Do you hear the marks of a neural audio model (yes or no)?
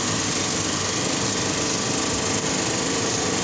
no